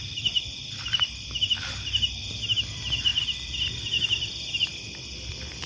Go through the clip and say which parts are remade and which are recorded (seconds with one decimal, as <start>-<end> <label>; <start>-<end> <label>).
0.0-2.2 remade; 2.2-2.7 recorded; 2.7-4.7 remade; 4.7-5.3 recorded; 5.3-5.7 remade